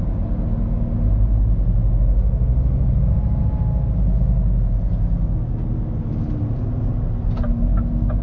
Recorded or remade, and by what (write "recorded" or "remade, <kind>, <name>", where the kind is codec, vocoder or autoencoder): recorded